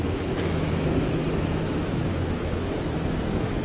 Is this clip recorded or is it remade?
remade